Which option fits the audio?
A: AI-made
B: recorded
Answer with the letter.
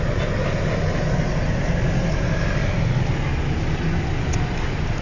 B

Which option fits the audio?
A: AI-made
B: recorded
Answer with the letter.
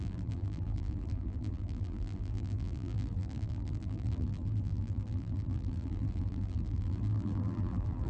A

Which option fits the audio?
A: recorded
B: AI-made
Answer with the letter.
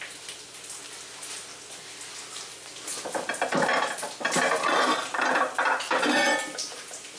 A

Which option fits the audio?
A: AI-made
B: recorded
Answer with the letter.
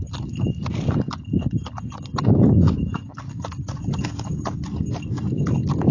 B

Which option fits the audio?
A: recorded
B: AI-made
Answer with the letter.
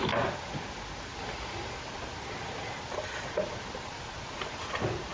A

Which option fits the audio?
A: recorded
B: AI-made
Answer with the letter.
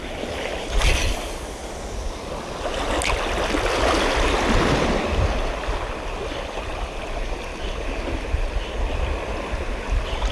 A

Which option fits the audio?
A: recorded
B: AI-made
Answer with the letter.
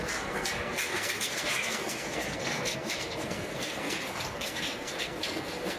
B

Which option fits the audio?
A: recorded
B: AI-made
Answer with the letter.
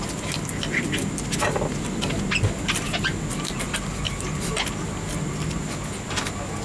A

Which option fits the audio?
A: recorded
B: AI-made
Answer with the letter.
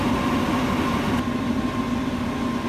A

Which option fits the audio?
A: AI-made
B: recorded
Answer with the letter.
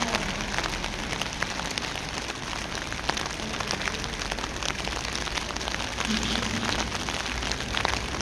B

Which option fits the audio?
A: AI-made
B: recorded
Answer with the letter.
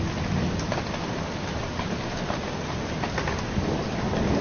B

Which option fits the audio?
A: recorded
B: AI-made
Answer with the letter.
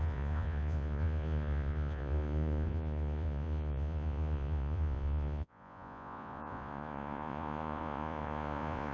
B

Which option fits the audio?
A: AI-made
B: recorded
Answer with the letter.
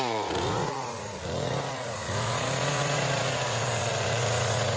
A